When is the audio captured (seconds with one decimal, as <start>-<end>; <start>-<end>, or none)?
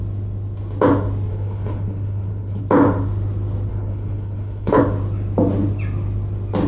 0.0-1.3; 2.6-3.7; 4.8-6.7